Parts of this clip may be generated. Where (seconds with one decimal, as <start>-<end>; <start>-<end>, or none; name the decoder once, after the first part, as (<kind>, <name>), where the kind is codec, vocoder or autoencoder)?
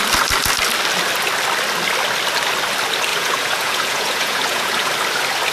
3.1-4.9 (vocoder, Vocos)